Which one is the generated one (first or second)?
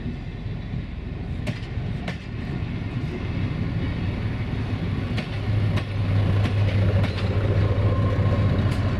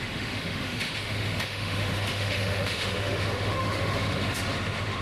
second